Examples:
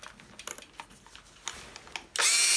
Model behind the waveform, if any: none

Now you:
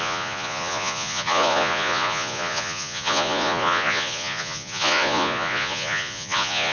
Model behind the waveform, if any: vocoder, Vocos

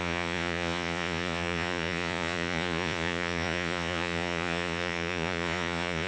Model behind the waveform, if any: vocoder, Vocos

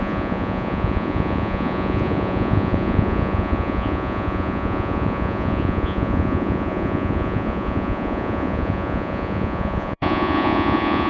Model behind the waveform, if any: vocoder, Vocos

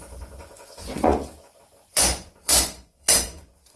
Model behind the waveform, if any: vocoder, Vocos